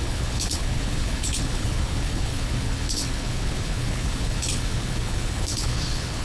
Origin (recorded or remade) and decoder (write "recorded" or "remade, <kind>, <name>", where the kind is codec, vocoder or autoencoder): remade, codec, HILCodec